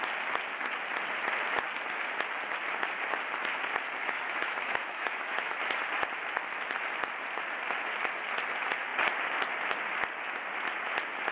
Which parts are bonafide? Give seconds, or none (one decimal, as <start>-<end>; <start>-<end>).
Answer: 0.0-4.0; 5.6-11.3